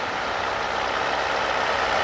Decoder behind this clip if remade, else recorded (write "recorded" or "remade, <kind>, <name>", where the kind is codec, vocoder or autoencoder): recorded